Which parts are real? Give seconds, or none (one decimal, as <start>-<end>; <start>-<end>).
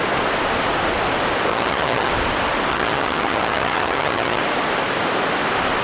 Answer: 0.0-1.5; 2.1-2.7; 4.4-5.8